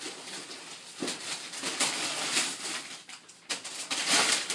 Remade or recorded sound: remade